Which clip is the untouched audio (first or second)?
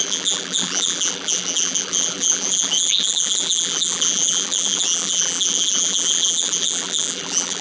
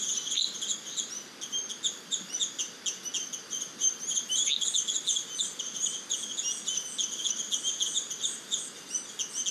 second